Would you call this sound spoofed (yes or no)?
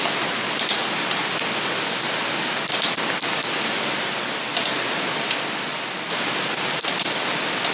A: no